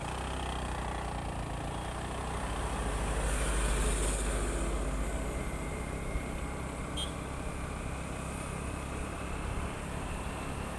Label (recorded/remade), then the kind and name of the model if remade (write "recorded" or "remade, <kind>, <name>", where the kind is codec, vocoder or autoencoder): recorded